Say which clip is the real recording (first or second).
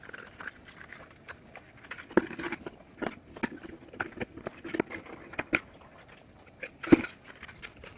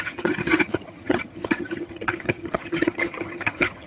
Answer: first